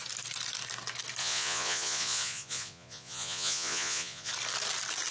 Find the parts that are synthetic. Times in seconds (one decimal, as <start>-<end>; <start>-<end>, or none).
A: 1.2-4.3